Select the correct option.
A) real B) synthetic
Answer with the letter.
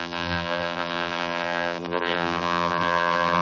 B